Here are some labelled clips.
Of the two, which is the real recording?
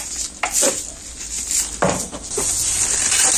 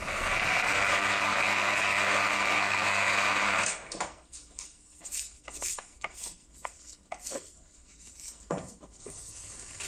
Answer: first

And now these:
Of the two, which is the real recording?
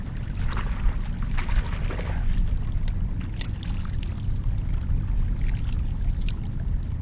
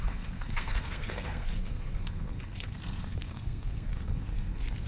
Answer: first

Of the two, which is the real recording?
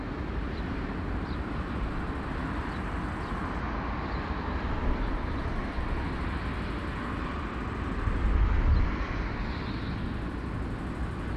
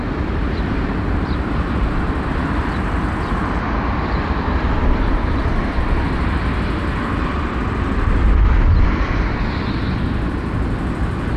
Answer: first